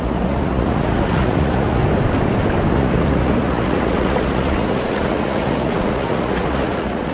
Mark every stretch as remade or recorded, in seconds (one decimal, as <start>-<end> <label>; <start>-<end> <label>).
0.0-1.8 remade; 1.8-2.7 recorded; 2.7-7.1 remade